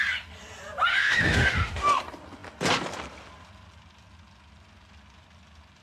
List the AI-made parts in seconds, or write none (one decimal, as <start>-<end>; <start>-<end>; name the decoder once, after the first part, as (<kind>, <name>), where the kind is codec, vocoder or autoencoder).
0.9-2.0 (autoencoder, DAC-VAE)